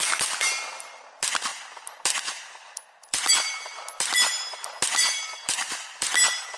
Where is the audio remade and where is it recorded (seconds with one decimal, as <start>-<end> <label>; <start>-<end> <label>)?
0.0-1.5 remade; 1.5-2.5 recorded; 2.5-6.6 remade